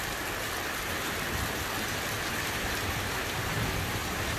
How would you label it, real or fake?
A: real